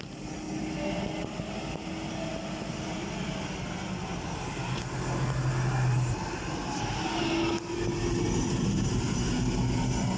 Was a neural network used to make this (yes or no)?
no